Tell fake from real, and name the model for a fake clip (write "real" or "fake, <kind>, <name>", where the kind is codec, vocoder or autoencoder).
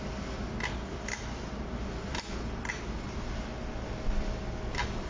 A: real